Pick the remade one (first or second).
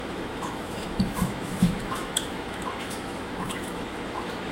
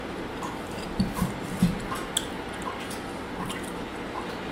first